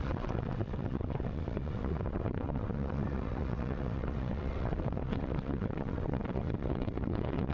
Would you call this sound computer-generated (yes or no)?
yes